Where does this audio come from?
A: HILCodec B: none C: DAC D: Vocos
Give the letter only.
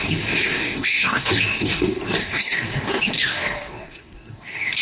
C